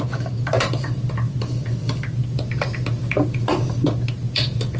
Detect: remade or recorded recorded